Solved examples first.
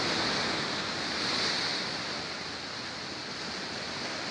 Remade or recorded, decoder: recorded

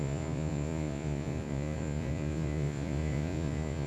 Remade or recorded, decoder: remade, vocoder, Vocos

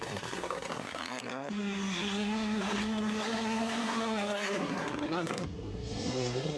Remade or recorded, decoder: remade, codec, SNAC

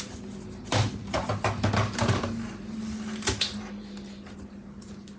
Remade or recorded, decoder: recorded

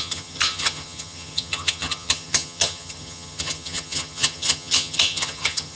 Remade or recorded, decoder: remade, vocoder, HiFi-GAN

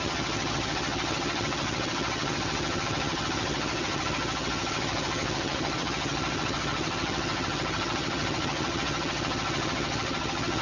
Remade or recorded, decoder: remade, vocoder, HiFi-GAN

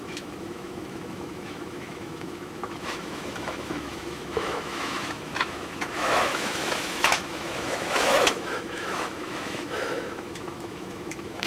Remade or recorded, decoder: remade, autoencoder, DAC-VAE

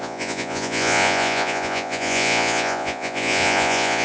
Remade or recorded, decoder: remade, vocoder, Vocos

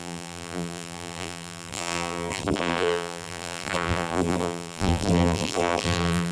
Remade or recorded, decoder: remade, vocoder, BigVGAN v2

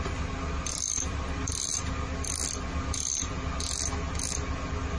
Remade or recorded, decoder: recorded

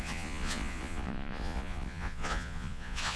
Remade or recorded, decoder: remade, vocoder, Vocos